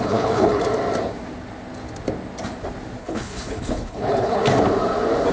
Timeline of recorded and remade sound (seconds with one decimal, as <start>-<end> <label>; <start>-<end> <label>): 0.0-0.6 remade; 0.6-3.0 recorded; 3.0-4.4 remade; 4.4-5.3 recorded